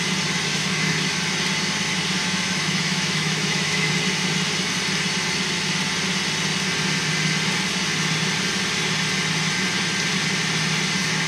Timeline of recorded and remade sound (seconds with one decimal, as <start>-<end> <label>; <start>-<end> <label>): 0.0-0.5 recorded; 0.5-1.2 remade; 1.2-2.2 recorded; 2.2-3.9 remade; 3.9-11.3 recorded